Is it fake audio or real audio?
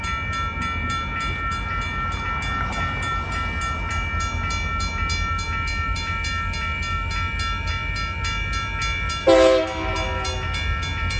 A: real